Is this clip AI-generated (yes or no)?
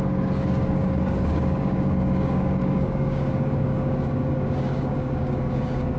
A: yes